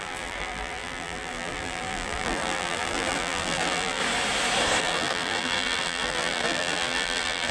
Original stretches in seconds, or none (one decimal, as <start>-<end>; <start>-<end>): 4.0-4.8